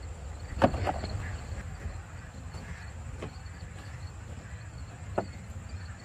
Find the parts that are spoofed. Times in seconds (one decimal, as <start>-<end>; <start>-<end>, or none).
none